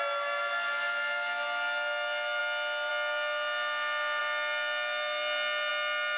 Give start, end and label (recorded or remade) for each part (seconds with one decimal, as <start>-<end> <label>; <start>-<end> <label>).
0.0-6.2 recorded